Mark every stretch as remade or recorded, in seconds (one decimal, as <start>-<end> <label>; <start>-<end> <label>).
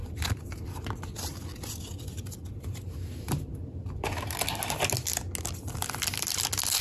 0.0-0.9 remade; 0.9-2.4 recorded; 2.4-4.0 remade; 4.0-6.8 recorded